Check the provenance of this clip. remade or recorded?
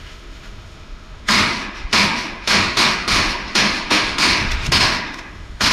remade